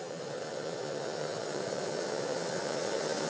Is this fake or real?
fake